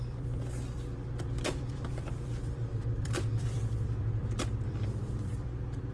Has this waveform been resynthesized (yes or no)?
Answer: yes